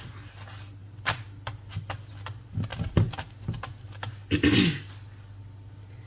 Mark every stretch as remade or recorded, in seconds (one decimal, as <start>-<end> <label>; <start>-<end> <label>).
0.0-6.1 recorded